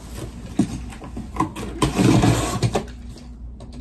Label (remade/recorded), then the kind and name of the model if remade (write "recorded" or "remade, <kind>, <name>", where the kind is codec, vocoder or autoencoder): recorded